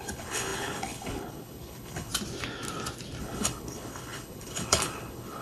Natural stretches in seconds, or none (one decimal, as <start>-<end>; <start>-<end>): 2.1-3.2